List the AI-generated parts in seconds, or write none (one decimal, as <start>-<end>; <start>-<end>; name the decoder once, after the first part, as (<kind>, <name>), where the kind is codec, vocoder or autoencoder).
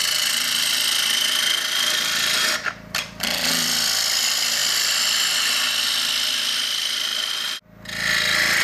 0.0-4.6 (vocoder, BigVGAN v2); 5.8-7.1